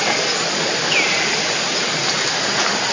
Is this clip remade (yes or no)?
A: no